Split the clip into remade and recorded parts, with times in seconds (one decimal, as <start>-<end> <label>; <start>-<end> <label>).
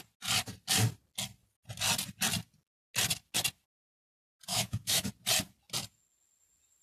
0.0-4.5 recorded; 4.5-5.1 remade; 5.1-6.8 recorded